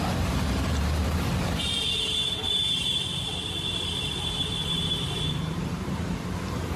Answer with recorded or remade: remade